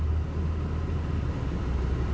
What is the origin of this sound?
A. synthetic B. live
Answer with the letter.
B